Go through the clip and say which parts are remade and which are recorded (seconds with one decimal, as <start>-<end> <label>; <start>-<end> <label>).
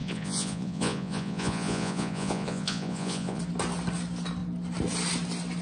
0.0-3.4 remade; 3.4-5.6 recorded